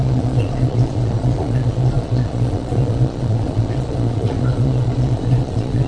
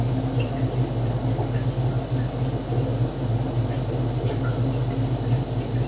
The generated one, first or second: first